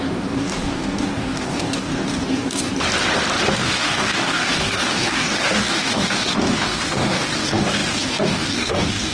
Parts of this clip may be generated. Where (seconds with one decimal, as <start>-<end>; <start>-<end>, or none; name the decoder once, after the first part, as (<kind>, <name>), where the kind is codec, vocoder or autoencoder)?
0.0-2.7 (codec, DAC); 3.5-9.1